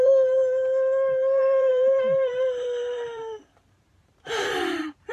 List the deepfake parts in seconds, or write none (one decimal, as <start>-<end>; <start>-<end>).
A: 0.0-5.1